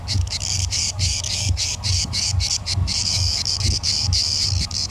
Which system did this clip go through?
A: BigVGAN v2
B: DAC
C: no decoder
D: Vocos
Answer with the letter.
B